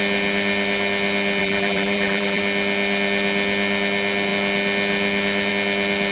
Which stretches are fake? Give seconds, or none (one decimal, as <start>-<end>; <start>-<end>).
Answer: 1.4-2.4